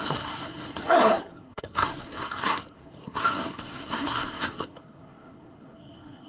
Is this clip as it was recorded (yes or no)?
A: no